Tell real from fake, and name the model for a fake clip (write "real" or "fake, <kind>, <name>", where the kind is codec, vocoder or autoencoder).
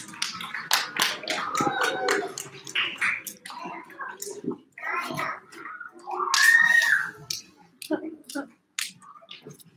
real